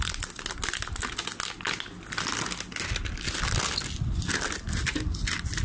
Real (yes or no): yes